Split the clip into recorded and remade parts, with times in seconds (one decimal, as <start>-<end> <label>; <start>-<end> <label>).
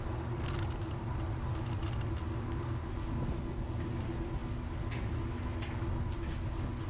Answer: 0.0-6.9 recorded